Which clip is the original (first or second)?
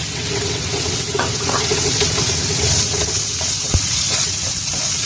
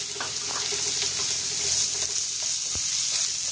second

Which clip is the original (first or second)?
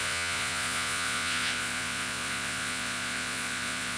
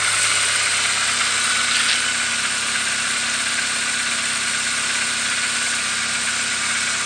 second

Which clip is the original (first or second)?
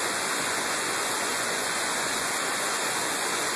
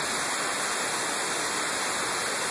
second